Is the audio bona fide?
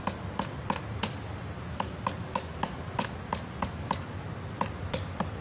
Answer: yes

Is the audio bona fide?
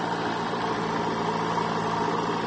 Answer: yes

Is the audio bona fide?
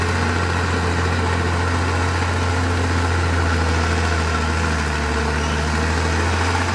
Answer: yes